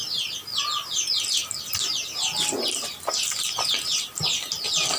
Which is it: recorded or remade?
recorded